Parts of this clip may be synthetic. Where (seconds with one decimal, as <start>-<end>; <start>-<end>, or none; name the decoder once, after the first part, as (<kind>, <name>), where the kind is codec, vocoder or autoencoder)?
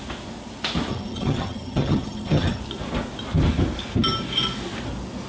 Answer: 0.9-2.6 (vocoder, HiFi-GAN)